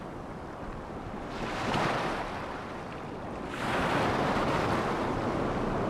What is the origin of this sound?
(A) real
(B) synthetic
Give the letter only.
A